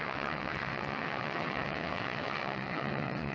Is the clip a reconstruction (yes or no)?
yes